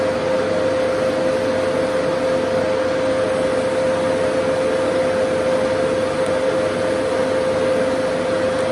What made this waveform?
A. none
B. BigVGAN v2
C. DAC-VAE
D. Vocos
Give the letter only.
A